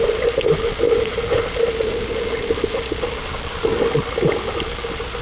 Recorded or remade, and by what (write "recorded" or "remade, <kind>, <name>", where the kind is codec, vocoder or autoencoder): recorded